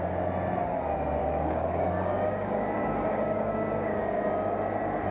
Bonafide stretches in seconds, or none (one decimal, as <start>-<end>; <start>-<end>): 0.0-1.2; 4.3-5.1